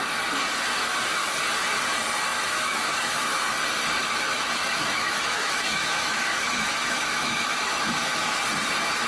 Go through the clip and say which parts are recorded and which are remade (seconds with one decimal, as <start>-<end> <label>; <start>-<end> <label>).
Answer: 0.0-2.3 recorded; 2.3-3.3 remade; 3.3-4.0 recorded; 4.0-8.4 remade; 8.4-9.1 recorded